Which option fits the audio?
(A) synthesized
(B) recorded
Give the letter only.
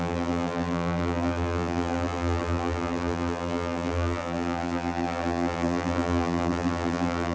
A